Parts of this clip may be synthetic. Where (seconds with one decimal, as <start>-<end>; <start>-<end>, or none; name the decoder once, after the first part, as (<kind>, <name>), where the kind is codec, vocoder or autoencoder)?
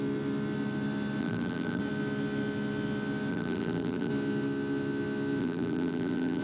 1.2-1.8 (vocoder, BigVGAN v2); 3.3-4.1; 5.4-6.4